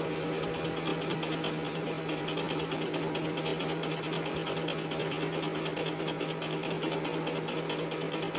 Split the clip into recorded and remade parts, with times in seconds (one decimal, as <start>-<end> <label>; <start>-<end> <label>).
0.0-8.4 recorded